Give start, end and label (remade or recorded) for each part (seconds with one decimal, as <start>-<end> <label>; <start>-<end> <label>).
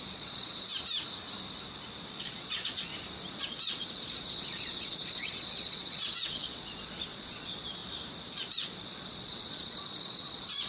0.0-0.7 remade; 0.7-2.2 recorded; 2.2-2.9 remade; 2.9-3.4 recorded; 3.4-7.8 remade; 7.8-8.3 recorded; 8.3-10.7 remade